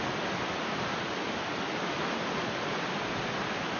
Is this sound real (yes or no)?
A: yes